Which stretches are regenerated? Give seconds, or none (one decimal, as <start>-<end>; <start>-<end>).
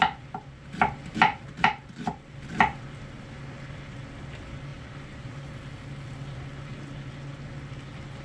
1.3-1.9; 4.7-5.3